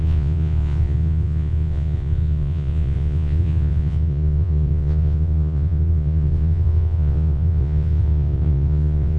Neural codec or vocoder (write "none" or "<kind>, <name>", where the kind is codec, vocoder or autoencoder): vocoder, Vocos